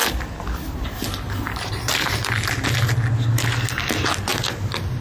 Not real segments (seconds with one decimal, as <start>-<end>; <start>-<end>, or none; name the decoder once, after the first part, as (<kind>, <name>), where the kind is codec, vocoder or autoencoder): 0.0-2.5 (vocoder, BigVGAN v2)

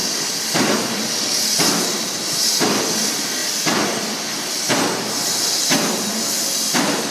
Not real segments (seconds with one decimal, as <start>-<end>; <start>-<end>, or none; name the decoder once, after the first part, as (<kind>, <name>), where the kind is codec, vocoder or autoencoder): 0.0-3.4 (vocoder, BigVGAN v2); 5.6-7.1